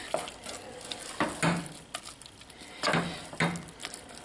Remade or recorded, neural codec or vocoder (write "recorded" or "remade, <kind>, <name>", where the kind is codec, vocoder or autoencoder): recorded